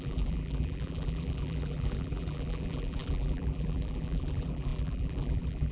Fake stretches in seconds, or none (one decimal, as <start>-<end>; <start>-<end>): 0.0-5.7